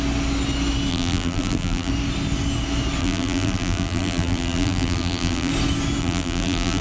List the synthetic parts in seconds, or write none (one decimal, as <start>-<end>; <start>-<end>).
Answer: 0.9-1.9; 3.0-5.5; 6.0-6.8